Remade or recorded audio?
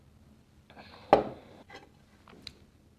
recorded